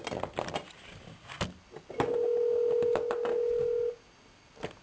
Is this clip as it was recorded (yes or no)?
yes